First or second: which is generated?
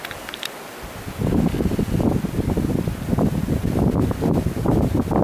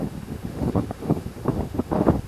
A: second